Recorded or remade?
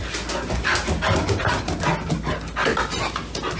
recorded